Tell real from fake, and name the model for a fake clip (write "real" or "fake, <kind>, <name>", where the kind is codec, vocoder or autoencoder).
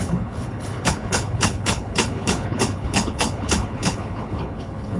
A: fake, codec, HILCodec